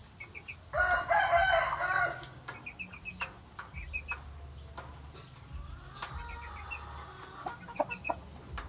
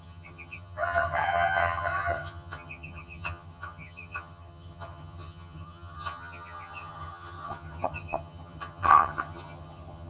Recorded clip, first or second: first